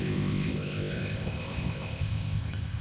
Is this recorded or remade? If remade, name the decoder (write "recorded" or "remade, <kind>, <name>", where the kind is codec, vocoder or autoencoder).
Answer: remade, codec, ZipCodec